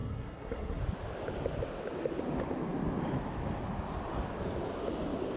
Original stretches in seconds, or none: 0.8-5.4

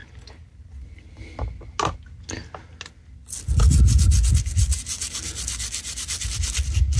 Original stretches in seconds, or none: 0.0-7.0

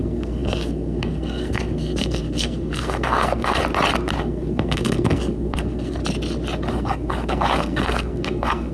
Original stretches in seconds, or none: 3.6-4.2; 6.0-6.7

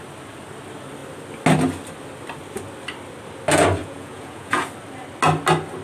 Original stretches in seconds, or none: 0.0-3.8; 4.7-5.8